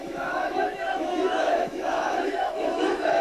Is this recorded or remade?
remade